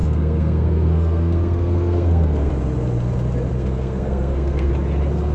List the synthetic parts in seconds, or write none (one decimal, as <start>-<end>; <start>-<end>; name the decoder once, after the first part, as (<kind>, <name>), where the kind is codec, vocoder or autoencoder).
0.0-2.5 (codec, SNAC); 3.5-4.7